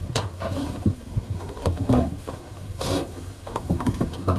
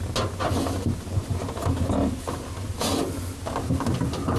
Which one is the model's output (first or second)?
first